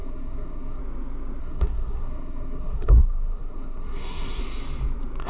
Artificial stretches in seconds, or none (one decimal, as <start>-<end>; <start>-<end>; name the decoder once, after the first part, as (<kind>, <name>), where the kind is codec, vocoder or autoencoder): 0.0-0.8 (codec, SNAC); 1.4-4.4